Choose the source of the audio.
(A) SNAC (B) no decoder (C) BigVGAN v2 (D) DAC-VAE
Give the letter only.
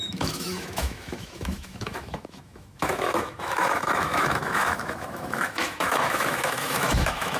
D